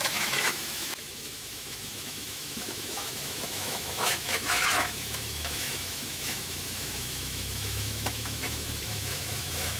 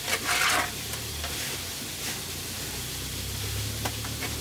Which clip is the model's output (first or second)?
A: first